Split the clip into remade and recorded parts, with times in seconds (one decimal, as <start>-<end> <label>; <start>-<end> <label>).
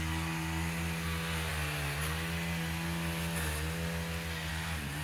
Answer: 0.0-5.0 recorded